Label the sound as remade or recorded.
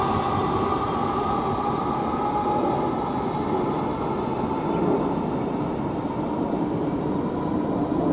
recorded